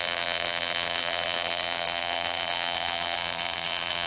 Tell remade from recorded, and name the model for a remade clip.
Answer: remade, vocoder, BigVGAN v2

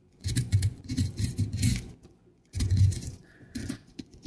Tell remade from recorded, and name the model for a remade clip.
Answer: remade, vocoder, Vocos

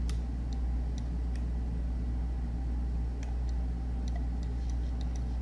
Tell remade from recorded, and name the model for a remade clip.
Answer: recorded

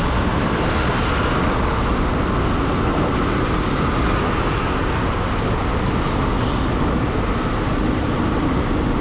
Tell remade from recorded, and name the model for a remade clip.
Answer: recorded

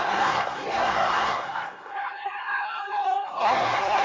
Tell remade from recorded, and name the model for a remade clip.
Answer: remade, codec, SNAC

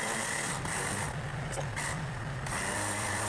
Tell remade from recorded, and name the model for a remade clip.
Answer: recorded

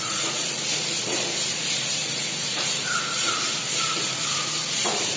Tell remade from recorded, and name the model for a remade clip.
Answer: remade, vocoder, Vocos